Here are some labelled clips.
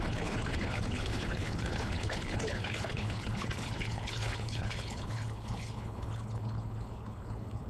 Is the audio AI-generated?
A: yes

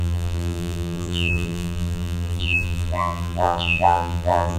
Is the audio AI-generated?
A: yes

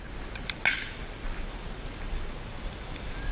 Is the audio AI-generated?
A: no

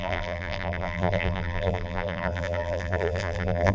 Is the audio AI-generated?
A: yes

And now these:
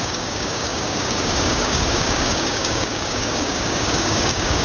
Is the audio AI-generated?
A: yes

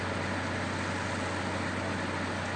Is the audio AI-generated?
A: no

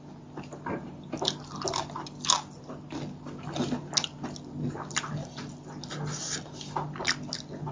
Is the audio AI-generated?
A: no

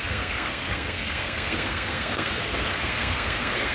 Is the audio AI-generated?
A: yes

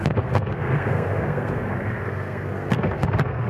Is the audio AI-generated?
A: yes